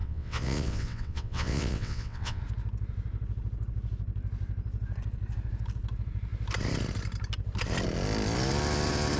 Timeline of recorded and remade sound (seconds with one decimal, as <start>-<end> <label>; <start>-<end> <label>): 0.0-2.4 remade; 2.4-9.2 recorded